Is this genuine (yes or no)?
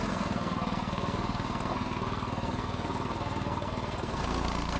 no